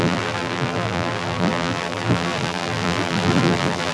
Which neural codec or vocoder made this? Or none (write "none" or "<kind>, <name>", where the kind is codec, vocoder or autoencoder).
vocoder, BigVGAN v2